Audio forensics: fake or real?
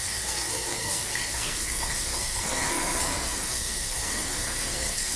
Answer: fake